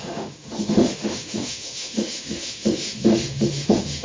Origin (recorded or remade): remade